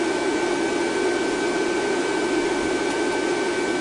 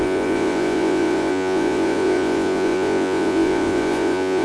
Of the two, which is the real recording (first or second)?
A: first